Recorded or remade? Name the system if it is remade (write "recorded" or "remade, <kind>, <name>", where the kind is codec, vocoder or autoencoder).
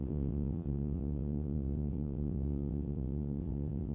remade, vocoder, WaveNeXt